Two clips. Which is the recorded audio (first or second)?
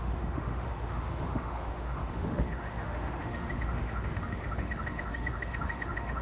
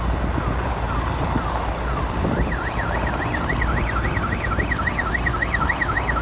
second